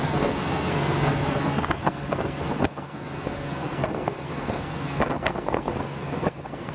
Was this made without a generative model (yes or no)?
no